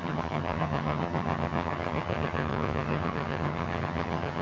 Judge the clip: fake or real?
fake